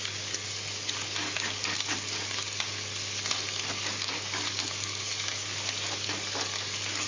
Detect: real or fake fake